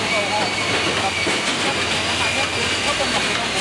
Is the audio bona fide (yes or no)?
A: yes